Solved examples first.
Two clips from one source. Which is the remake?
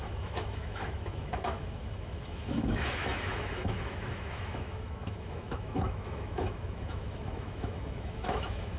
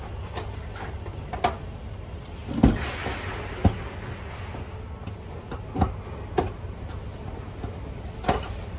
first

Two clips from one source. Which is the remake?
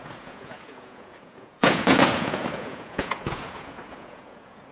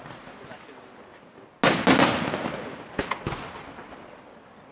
first